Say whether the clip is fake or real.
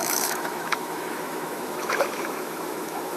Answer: fake